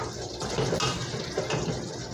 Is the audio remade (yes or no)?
no